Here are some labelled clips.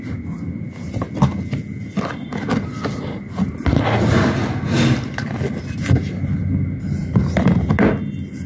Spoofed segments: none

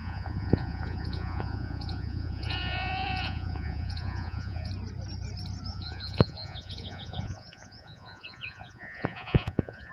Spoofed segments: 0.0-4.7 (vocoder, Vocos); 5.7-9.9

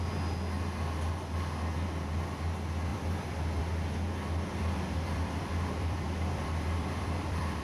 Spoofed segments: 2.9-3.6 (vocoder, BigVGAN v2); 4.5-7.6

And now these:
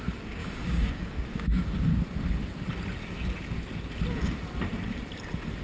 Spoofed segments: 0.0-1.9 (codec, DAC)